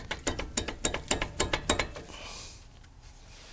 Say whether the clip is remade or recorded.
recorded